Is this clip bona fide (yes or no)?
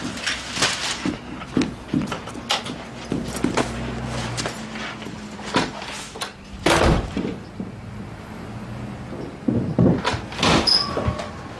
yes